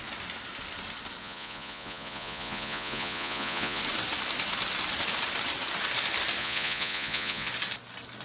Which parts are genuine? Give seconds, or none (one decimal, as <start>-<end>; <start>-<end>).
0.0-1.2; 3.8-6.4; 7.5-8.2